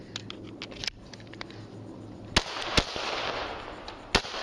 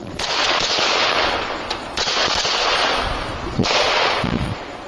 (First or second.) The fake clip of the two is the second